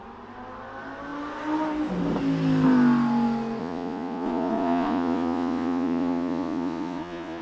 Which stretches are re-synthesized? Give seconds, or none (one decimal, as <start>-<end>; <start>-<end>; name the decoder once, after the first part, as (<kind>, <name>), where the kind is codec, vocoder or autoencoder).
3.6-7.4 (vocoder, Vocos)